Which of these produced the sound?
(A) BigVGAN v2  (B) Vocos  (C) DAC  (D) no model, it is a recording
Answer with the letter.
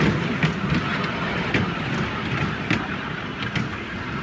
D